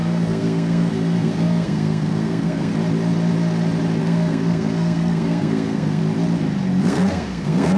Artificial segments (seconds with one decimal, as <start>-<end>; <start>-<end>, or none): 0.0-2.7; 4.0-6.0; 6.8-7.8